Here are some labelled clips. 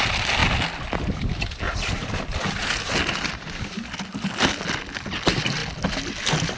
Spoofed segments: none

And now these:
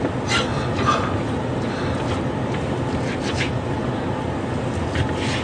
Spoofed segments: none

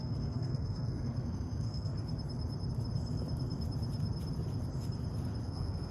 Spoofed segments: 0.0-1.9; 5.4-5.9

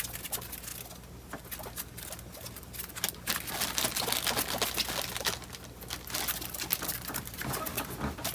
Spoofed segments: none

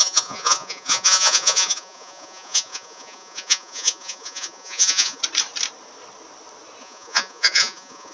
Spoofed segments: 0.0-5.2; 6.8-8.1

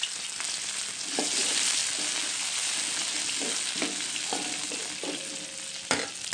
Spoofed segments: none

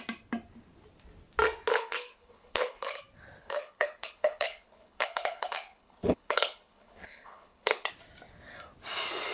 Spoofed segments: 1.7-3.0; 3.4-7.9